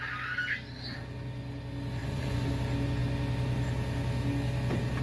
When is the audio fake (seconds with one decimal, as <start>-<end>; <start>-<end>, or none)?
2.0-2.5